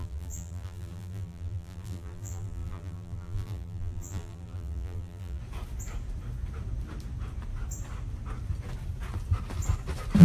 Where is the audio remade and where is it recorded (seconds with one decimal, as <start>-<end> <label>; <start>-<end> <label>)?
0.0-5.4 remade; 5.4-10.2 recorded